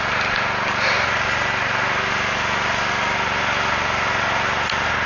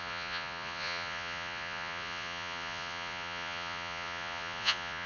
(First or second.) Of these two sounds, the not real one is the second